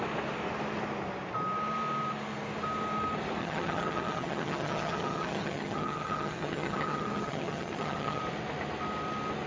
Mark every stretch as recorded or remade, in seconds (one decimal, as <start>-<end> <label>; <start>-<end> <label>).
0.0-3.4 recorded; 3.4-8.2 remade; 8.2-9.5 recorded